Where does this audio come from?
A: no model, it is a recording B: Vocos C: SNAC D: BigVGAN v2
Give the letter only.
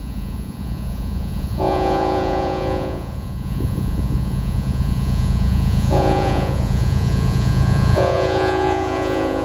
B